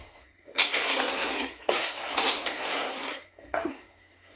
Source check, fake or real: fake